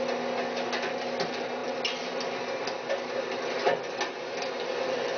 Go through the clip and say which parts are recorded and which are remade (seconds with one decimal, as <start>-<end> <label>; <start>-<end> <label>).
0.0-5.2 recorded